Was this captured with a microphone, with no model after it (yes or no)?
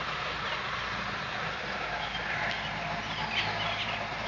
yes